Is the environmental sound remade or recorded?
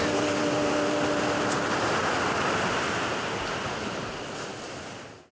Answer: recorded